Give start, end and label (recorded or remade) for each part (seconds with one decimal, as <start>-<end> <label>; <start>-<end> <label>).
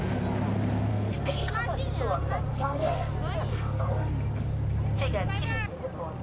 0.0-0.9 recorded; 0.9-1.5 remade; 1.5-2.5 recorded; 2.5-3.1 remade; 3.1-3.5 recorded; 3.5-4.1 remade; 4.1-6.2 recorded